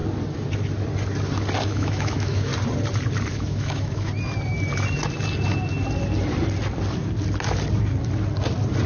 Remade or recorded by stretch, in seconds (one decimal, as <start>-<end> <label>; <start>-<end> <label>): 0.0-1.6 recorded; 1.6-2.5 remade; 2.5-3.3 recorded; 3.3-4.1 remade; 4.1-8.9 recorded